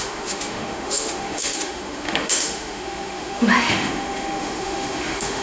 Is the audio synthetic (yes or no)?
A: yes